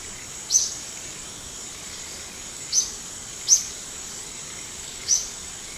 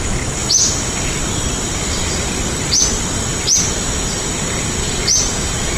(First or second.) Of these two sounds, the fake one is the first